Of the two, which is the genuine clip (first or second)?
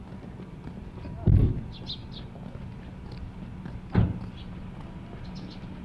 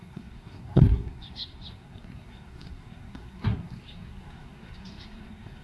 first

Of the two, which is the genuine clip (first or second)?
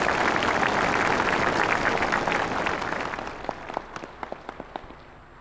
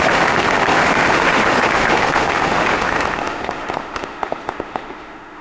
first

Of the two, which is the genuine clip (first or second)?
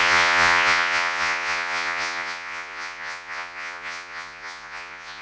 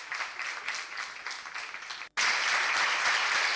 second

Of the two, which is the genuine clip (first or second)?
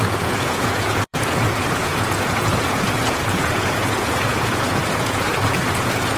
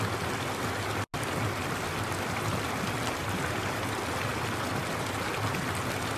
second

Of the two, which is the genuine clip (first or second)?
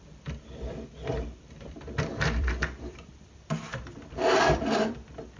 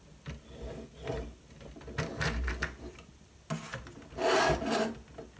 second